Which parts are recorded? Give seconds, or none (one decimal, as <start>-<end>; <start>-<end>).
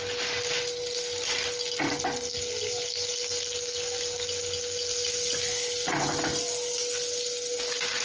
0.0-8.0